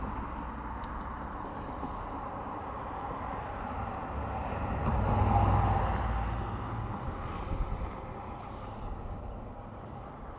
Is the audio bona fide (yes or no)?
yes